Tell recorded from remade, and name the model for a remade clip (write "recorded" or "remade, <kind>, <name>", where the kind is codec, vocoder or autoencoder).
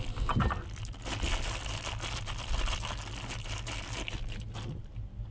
recorded